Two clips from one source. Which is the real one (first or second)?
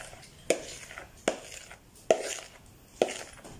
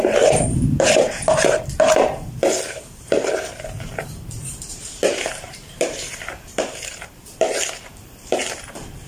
first